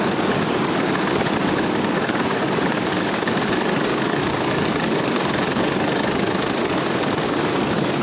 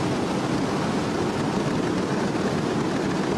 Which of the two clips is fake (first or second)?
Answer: first